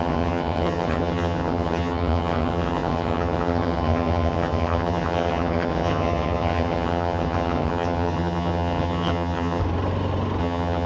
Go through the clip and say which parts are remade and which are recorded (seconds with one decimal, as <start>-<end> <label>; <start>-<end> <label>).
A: 0.0-9.6 remade; 9.6-10.4 recorded; 10.4-10.9 remade